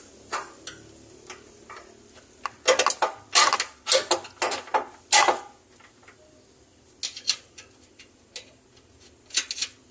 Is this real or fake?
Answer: real